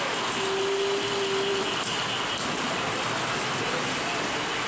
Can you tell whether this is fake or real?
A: real